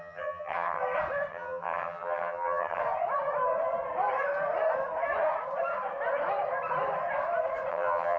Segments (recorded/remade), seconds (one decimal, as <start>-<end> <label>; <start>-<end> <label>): 0.0-0.8 remade; 0.8-1.3 recorded; 1.3-2.8 remade; 2.8-7.7 recorded; 7.7-8.2 remade